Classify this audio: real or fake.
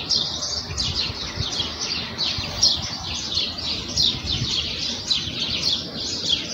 real